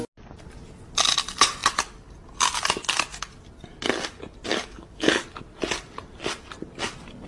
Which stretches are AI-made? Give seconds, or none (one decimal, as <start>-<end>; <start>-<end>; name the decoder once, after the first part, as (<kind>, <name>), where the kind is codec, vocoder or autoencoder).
4.5-5.1 (codec, DAC)